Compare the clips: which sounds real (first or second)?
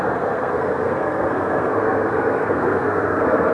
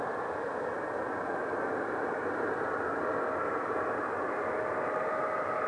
second